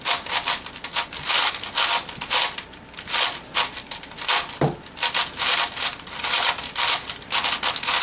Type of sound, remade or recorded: recorded